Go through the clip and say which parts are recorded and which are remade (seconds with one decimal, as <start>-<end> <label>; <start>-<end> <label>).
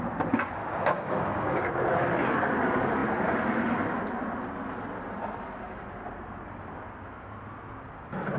0.0-0.6 recorded; 0.6-1.6 remade; 1.6-8.4 recorded